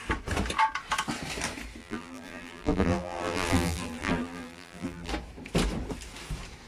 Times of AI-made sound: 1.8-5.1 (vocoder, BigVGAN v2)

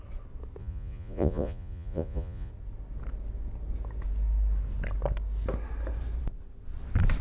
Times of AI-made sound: 0.6-2.5 (vocoder, Vocos)

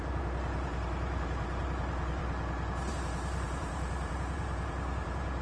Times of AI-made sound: 0.0-2.2 (vocoder, BigVGAN v2); 2.9-5.4

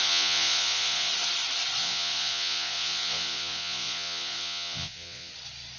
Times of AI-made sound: 0.0-1.1 (vocoder, Vocos); 1.8-5.3

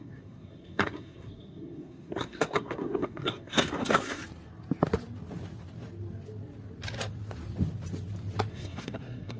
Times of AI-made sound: 0.0-4.2 (codec, SNAC); 8.5-9.4

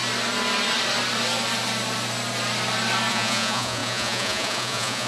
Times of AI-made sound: 3.1-5.1 (vocoder, Vocos)

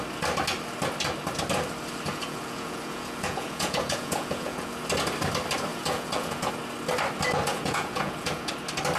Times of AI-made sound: 2.1-4.7 (vocoder, Vocos); 5.7-6.5; 7.5-8.5

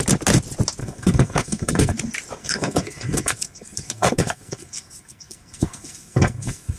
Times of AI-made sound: 0.8-2.0 (codec, SNAC); 2.4-6.8